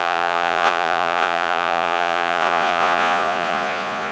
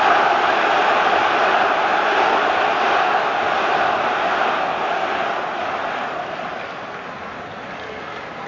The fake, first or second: first